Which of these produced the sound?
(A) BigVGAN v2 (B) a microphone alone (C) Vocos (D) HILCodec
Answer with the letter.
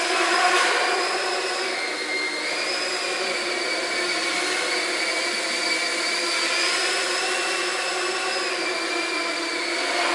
B